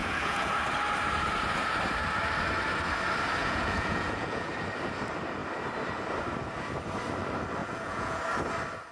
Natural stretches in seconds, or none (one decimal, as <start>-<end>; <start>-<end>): 0.5-3.4; 4.5-7.6; 8.2-8.9